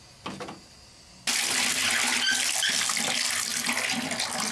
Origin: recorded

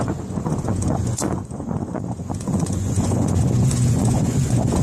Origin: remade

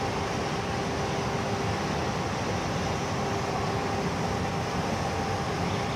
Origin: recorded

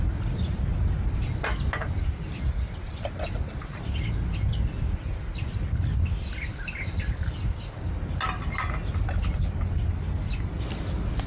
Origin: recorded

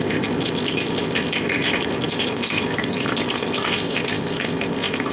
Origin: remade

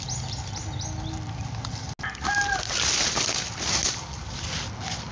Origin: recorded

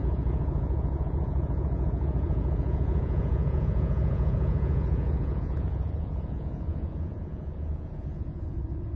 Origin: remade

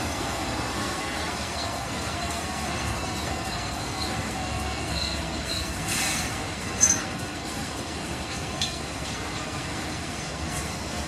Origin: remade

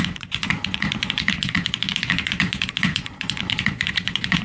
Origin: remade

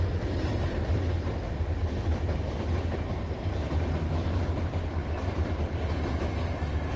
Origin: remade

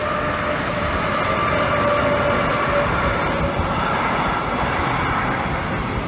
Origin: recorded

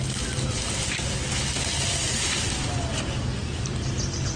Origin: recorded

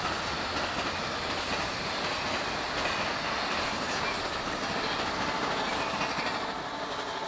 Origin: recorded